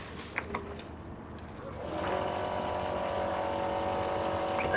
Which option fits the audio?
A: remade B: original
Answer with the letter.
B